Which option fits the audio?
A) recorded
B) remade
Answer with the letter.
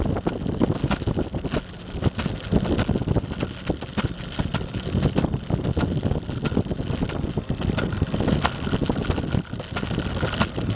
A